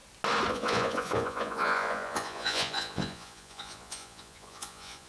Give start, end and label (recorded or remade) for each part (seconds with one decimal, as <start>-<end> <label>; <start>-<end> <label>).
0.0-0.5 recorded; 0.5-5.1 remade